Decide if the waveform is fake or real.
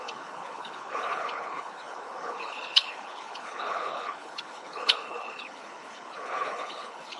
fake